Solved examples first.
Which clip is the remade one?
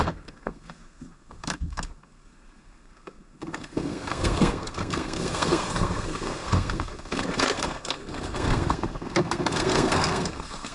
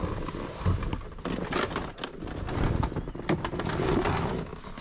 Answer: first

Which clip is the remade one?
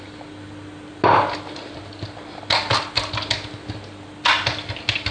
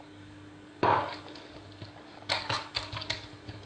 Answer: second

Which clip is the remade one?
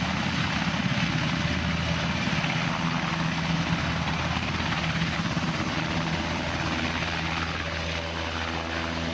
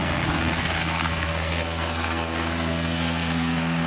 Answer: second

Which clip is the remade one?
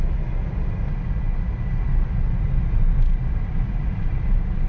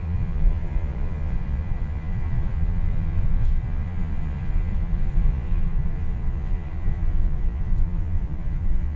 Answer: second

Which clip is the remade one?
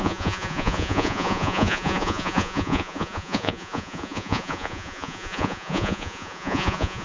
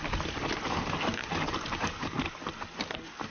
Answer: first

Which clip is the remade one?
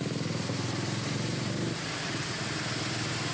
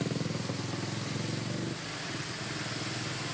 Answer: first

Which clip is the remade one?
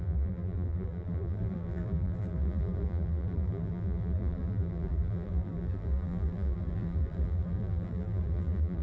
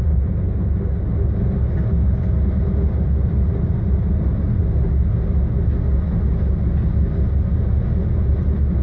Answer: first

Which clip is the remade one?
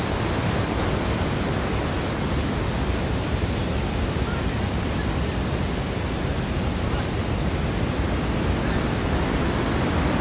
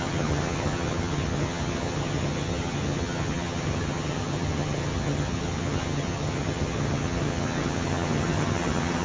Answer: second